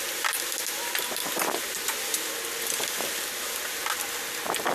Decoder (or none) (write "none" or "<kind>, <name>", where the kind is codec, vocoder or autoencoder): none